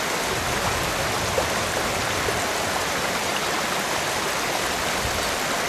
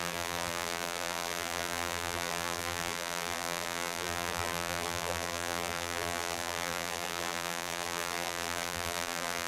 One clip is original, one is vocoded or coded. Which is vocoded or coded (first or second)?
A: second